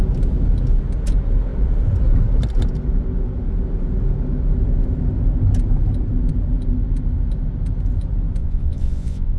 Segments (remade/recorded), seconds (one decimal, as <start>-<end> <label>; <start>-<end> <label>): 0.0-8.4 recorded; 8.4-9.4 remade